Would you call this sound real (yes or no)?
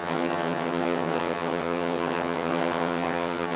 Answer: no